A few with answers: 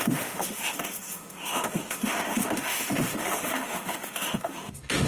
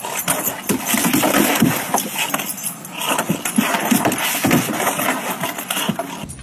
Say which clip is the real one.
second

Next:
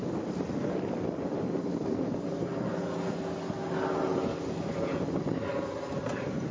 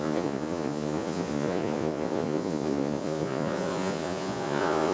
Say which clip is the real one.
first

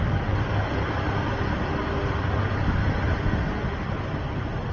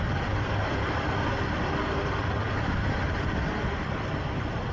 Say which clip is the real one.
first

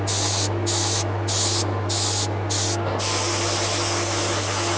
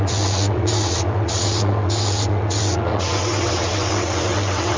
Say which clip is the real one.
first